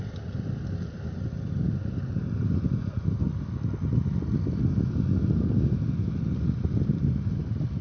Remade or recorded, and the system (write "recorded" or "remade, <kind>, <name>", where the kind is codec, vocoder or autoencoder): recorded